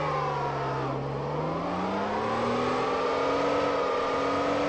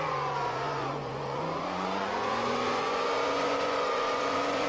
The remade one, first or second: second